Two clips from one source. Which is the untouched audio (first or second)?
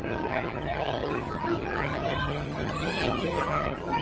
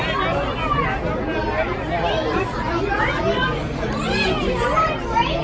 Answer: second